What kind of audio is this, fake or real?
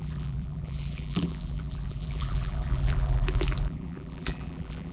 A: fake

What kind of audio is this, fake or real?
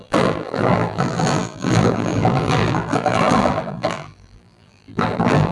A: fake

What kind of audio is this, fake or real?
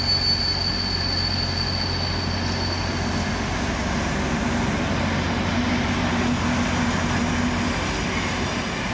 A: real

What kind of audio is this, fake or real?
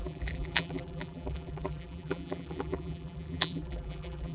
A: fake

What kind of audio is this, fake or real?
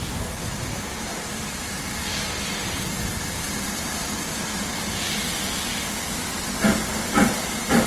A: real